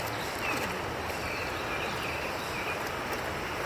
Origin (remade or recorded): recorded